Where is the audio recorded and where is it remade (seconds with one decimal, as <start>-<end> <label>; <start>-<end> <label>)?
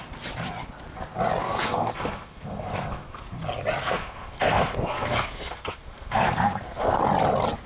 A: 0.0-1.4 recorded; 1.4-3.4 remade; 3.4-3.8 recorded; 3.8-7.0 remade; 7.0-7.7 recorded